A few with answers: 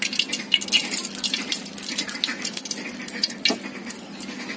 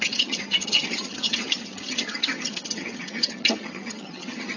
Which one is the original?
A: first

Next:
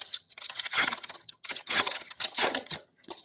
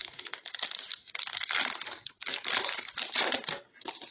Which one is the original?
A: second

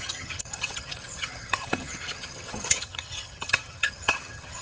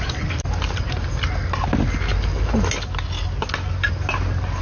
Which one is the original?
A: second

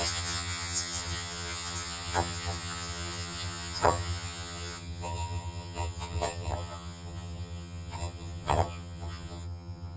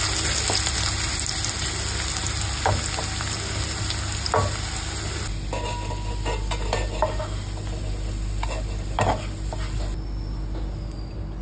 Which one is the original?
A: second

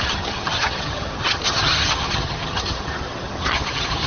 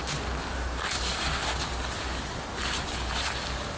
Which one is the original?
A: second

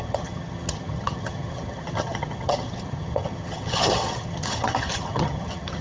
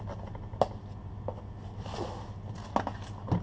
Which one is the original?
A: second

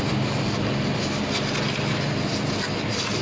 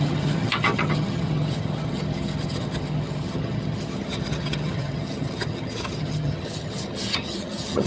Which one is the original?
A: first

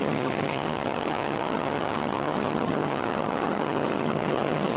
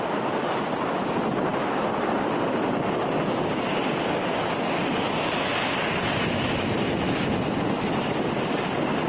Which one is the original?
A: second